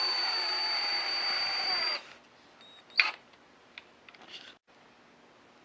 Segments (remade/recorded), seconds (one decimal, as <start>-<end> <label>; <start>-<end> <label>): 0.0-2.2 remade; 2.2-5.6 recorded